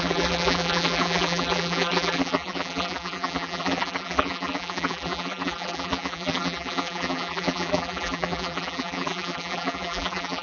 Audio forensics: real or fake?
fake